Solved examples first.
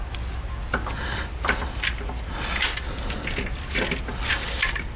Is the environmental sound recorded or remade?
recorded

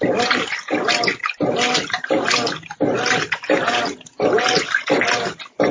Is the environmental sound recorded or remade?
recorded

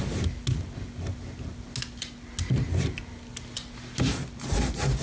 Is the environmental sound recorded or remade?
recorded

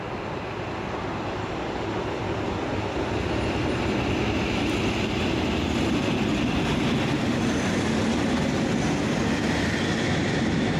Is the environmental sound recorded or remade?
recorded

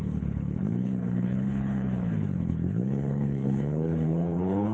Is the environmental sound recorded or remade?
remade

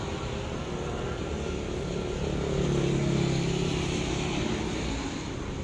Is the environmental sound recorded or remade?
recorded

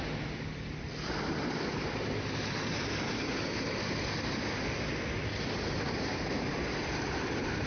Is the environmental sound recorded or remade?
recorded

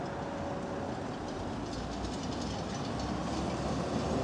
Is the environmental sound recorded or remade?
recorded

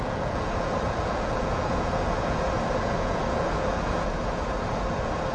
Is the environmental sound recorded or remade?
remade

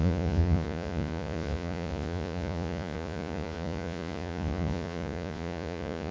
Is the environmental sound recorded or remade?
remade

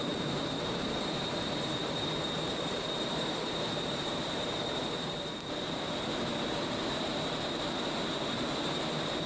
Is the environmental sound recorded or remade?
remade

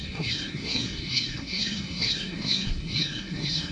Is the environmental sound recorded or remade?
remade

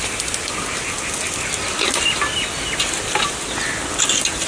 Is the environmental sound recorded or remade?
recorded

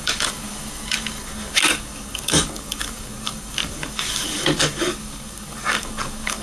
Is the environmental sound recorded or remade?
remade